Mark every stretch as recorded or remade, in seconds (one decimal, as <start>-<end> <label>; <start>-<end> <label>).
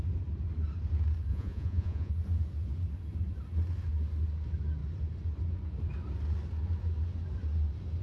0.0-1.3 recorded; 1.3-2.1 remade; 2.1-8.0 recorded